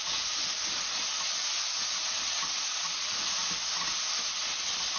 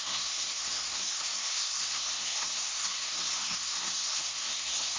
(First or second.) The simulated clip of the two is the second